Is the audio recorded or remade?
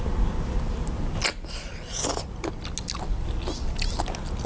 recorded